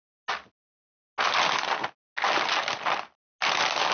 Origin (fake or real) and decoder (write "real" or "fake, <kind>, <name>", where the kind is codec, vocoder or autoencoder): real